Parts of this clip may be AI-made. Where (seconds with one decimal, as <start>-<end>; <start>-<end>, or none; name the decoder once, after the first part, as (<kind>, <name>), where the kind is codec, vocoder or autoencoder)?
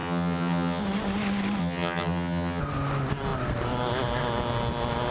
0.0-0.8 (vocoder, HiFi-GAN); 1.6-2.6